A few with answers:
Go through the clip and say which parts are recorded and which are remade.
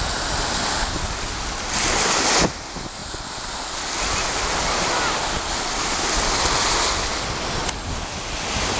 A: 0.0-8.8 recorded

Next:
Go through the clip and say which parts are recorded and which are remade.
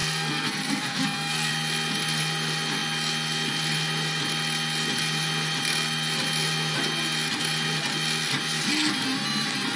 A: 0.0-1.5 remade; 1.5-9.8 recorded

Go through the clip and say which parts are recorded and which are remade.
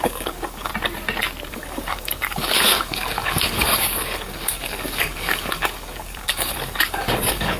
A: 0.0-0.7 remade; 0.7-1.5 recorded; 1.5-7.6 remade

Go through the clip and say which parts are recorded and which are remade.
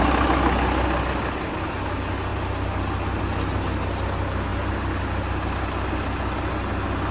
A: 0.0-7.1 recorded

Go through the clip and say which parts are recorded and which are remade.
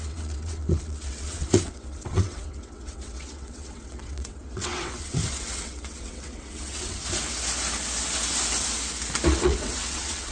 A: 0.0-7.0 remade; 7.0-9.3 recorded; 9.3-10.3 remade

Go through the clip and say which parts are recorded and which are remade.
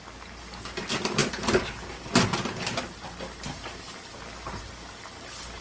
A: 0.0-5.6 recorded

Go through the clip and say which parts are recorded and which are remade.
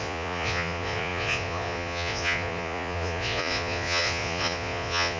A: 0.0-5.2 remade